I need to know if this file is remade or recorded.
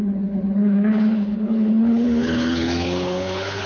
remade